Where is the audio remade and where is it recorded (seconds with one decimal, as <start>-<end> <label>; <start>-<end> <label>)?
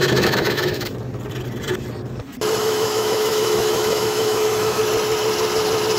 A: 0.0-0.9 remade; 0.9-2.6 recorded; 2.6-4.8 remade; 4.8-6.0 recorded